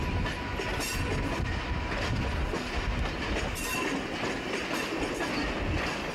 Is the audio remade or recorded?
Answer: recorded